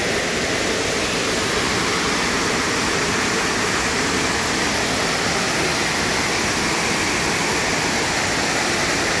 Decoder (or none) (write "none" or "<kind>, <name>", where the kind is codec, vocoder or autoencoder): none